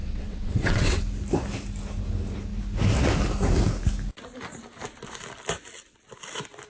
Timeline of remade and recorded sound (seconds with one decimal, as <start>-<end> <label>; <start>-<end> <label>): 0.0-1.0 remade; 1.0-6.7 recorded